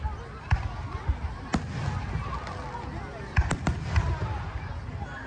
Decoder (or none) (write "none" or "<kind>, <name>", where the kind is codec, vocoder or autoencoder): none